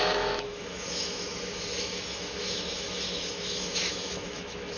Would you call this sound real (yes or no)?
no